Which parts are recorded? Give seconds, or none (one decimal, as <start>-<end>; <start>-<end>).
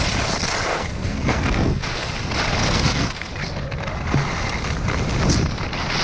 0.0-0.7; 2.1-2.6; 3.3-6.0